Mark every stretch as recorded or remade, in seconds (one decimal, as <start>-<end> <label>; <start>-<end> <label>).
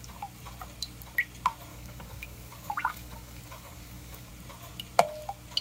0.0-1.7 recorded; 1.7-4.3 remade; 4.3-5.6 recorded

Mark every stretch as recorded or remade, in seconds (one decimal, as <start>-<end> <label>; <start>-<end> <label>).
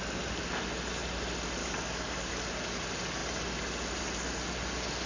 0.0-1.6 recorded; 1.6-2.3 remade; 2.3-5.1 recorded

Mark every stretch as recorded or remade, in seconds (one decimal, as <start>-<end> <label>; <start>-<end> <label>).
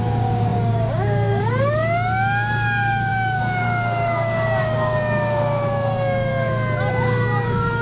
0.0-6.3 remade; 6.3-6.9 recorded; 6.9-7.8 remade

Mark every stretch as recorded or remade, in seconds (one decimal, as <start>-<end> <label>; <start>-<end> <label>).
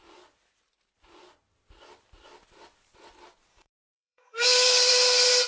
0.0-3.5 recorded; 3.5-4.9 remade; 4.9-5.5 recorded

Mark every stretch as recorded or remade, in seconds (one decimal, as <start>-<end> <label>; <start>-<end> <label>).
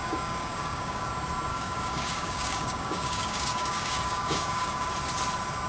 0.0-1.1 remade; 1.1-1.5 recorded; 1.5-4.9 remade; 4.9-5.7 recorded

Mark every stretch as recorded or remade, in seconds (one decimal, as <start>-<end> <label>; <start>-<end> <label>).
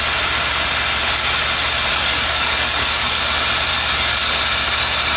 0.0-1.9 recorded; 1.9-3.2 remade; 3.2-3.7 recorded; 3.7-4.4 remade; 4.4-5.2 recorded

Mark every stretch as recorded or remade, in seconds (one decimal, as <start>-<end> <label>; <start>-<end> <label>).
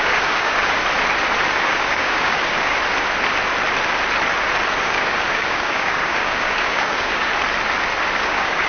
0.0-0.8 remade; 0.8-1.6 recorded; 1.6-2.8 remade; 2.8-4.8 recorded; 4.8-7.3 remade; 7.3-8.2 recorded; 8.2-8.7 remade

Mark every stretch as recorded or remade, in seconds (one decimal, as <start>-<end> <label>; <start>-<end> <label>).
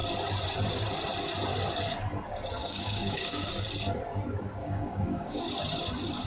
0.0-2.6 recorded; 2.6-3.5 remade; 3.5-4.6 recorded; 4.6-5.4 remade; 5.4-6.3 recorded